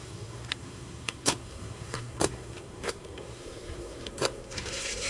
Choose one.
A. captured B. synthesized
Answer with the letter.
B